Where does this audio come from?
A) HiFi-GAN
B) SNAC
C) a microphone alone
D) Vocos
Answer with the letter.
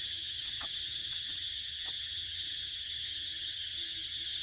A